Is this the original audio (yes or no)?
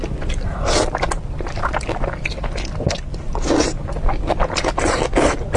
yes